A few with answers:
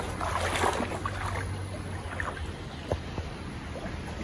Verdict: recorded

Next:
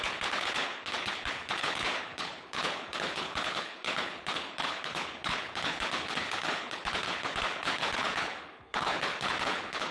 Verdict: remade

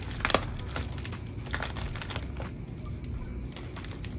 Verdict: recorded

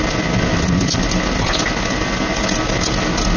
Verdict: recorded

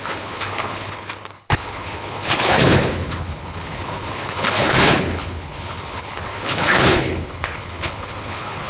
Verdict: remade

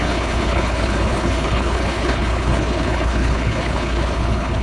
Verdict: remade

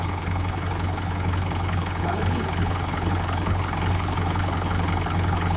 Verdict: remade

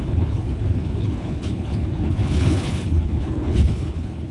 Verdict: remade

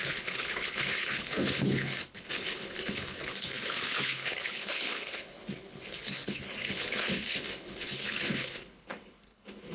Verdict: remade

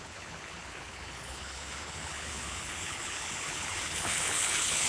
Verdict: remade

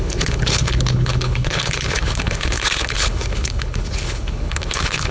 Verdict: remade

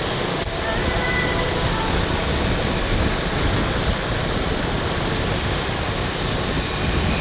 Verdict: recorded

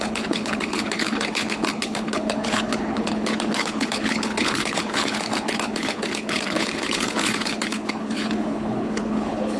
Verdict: remade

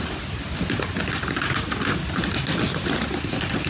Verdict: recorded